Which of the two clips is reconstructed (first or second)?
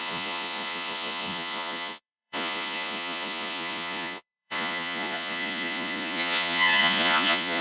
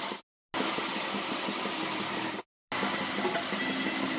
first